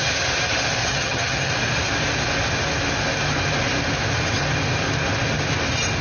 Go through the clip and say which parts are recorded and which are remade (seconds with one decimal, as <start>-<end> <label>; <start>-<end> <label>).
0.0-0.8 recorded; 0.8-1.5 remade; 1.5-6.0 recorded